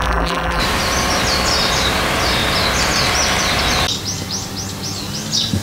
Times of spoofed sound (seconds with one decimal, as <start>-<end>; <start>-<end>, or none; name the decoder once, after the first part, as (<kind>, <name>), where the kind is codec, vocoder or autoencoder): 0.0-0.6 (vocoder, BigVGAN v2)